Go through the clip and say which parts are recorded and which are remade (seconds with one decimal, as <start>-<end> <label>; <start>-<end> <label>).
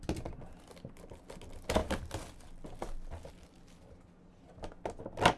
0.0-5.4 recorded